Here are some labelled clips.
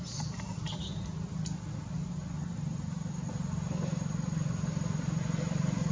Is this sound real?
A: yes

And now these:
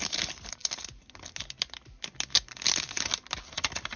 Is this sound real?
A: yes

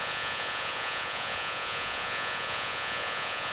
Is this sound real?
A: no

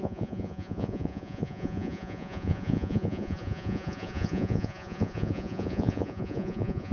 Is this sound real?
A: no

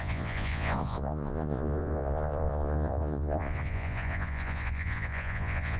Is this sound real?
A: no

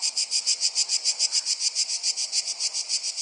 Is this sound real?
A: no